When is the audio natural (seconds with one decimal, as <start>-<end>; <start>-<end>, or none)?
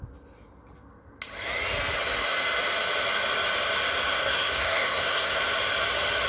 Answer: 0.0-4.2; 5.4-6.3